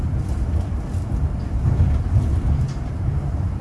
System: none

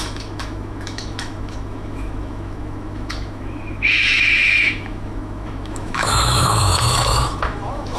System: autoencoder, DAC-VAE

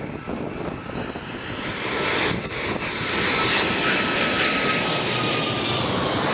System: none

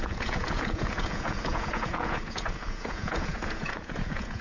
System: vocoder, Vocos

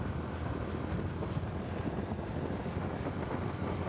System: none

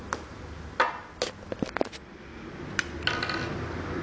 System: none